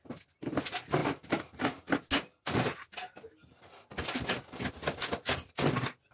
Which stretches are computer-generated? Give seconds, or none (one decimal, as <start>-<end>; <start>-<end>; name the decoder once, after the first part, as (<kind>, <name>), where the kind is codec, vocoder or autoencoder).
none